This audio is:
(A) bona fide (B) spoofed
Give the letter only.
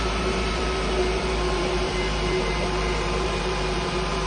B